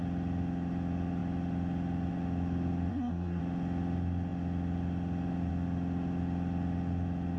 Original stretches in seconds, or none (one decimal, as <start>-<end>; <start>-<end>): 0.0-2.9; 3.4-7.4